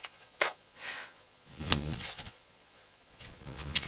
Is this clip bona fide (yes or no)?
no